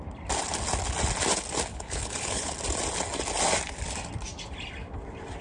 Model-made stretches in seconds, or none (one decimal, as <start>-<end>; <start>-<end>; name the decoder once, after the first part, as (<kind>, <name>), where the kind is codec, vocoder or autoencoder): 1.7-2.5 (codec, HILCodec)